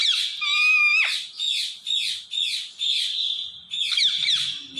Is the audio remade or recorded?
recorded